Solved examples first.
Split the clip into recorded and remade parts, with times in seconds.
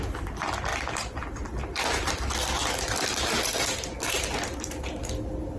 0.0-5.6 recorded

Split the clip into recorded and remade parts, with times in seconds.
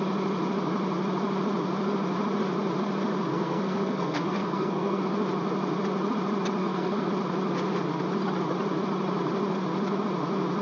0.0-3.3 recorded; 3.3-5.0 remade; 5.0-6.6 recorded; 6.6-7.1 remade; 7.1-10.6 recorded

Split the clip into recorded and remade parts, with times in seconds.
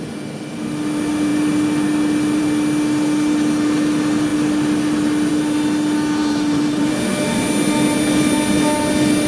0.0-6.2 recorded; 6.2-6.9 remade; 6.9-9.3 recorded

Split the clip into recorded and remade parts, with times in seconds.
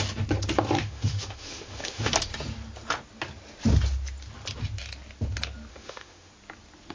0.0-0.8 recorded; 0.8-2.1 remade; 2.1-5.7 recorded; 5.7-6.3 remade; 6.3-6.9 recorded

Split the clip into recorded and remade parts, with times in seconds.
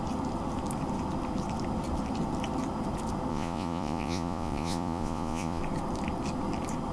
0.0-3.3 recorded; 3.3-5.6 remade; 5.6-6.9 recorded